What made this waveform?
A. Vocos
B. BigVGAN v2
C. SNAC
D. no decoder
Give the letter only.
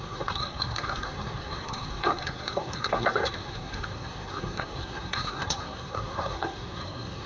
C